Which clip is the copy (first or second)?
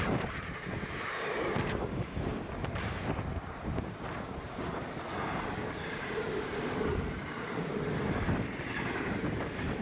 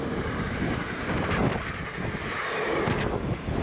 first